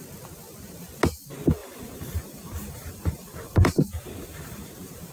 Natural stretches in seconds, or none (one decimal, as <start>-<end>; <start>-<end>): 0.0-1.6